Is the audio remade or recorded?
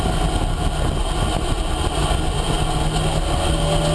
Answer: recorded